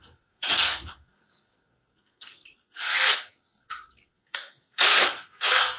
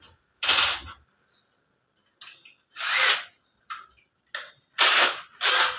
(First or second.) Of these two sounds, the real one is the second